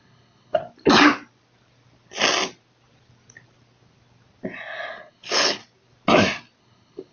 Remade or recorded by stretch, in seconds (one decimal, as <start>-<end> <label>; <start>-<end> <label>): 0.0-0.6 remade; 0.6-4.9 recorded; 4.9-5.6 remade; 5.6-6.6 recorded; 6.6-7.1 remade